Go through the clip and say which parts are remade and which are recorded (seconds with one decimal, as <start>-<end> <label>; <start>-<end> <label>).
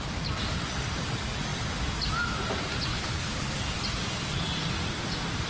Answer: 0.0-2.9 recorded; 2.9-3.6 remade; 3.6-5.5 recorded